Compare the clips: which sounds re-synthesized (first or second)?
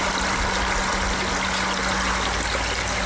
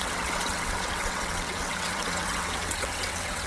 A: second